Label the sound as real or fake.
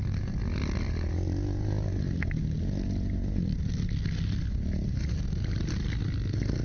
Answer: real